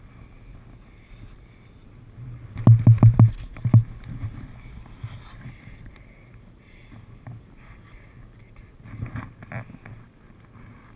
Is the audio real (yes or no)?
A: yes